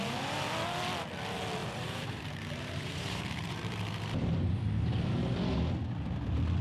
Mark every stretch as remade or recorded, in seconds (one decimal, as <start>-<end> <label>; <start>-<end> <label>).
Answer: 0.0-1.6 recorded; 1.6-4.6 remade; 4.6-6.6 recorded